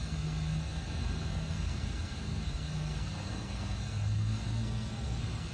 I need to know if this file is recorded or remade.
remade